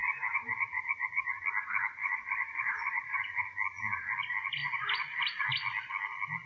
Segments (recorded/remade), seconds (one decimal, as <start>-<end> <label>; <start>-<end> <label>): 0.0-1.3 remade; 1.3-2.0 recorded; 2.0-3.2 remade; 3.2-4.6 recorded; 4.6-5.4 remade; 5.4-6.5 recorded